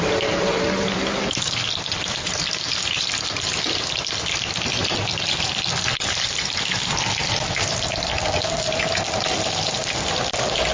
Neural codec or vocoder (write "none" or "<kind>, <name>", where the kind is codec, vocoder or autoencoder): none